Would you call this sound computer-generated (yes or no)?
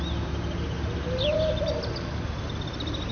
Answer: no